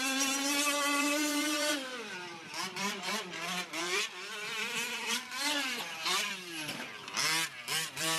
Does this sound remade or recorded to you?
remade